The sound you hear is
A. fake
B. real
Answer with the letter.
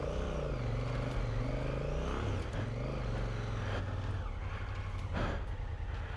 B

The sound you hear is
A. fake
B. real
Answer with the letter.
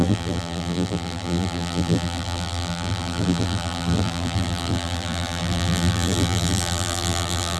A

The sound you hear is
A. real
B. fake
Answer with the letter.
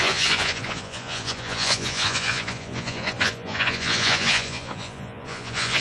B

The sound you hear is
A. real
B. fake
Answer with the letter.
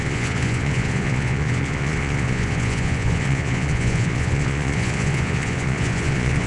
B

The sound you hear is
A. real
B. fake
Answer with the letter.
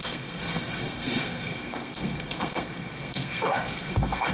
B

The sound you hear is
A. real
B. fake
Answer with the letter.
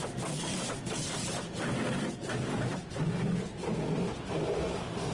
A